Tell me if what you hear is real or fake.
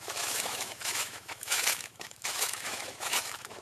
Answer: fake